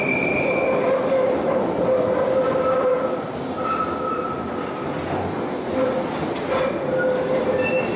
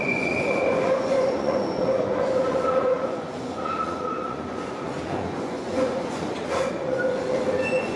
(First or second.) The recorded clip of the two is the first